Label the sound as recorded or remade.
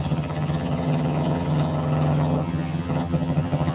remade